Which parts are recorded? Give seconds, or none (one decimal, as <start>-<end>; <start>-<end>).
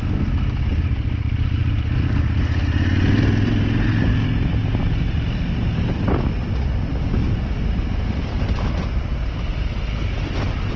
0.0-10.8